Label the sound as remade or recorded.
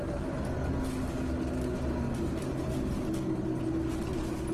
recorded